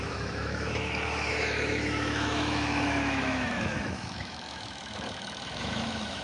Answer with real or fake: fake